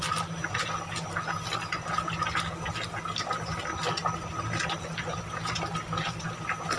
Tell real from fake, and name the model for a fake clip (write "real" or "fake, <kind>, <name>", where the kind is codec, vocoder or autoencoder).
real